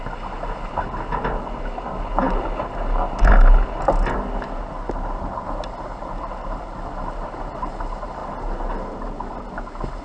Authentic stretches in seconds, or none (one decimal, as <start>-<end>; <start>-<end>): 0.0-10.0